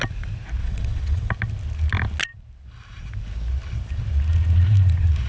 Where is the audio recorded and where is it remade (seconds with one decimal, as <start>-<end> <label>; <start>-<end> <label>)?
0.0-0.6 recorded; 0.6-1.3 remade; 1.3-5.3 recorded